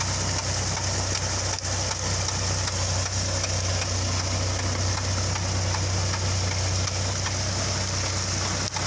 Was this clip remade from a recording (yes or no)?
no